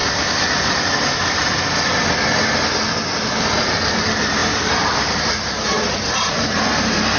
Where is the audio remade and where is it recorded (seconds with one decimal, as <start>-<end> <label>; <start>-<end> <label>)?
0.0-3.5 recorded; 3.5-7.2 remade